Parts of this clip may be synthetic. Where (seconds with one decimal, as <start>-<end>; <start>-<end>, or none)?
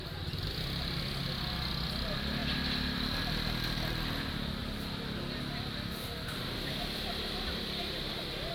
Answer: none